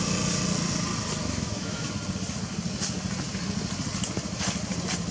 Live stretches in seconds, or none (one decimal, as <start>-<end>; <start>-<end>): 0.0-1.2; 1.9-5.1